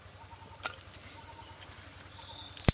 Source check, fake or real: real